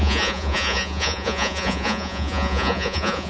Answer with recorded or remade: remade